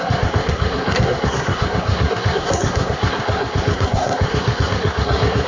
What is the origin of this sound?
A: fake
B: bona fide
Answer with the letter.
A